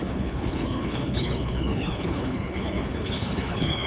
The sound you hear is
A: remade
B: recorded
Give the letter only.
A